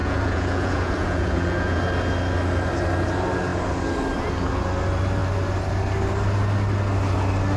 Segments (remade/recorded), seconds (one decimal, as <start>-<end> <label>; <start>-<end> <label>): 0.0-1.8 remade; 1.8-7.6 recorded